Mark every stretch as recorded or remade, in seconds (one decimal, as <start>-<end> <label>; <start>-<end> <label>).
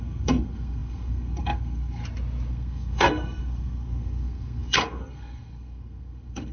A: 0.0-2.0 remade; 2.0-2.5 recorded; 2.5-6.5 remade